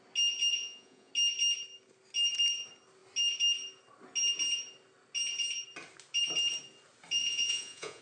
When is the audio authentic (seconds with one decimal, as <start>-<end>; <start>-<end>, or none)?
0.0-0.5; 1.1-7.2